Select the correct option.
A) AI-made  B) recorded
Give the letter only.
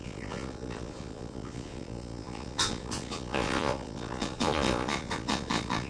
A